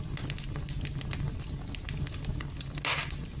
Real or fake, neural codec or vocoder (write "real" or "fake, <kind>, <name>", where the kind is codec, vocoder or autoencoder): real